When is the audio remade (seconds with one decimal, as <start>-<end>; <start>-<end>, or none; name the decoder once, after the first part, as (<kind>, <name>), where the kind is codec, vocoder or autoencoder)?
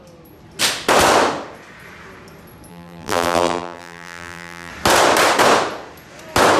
2.7-4.7 (vocoder, BigVGAN v2)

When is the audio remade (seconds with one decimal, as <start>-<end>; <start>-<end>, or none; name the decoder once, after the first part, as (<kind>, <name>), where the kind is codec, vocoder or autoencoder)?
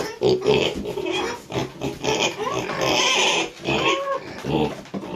none